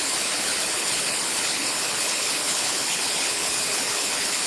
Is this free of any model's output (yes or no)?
no